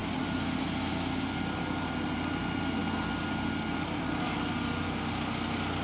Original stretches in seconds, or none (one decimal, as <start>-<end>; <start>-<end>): 0.0-5.8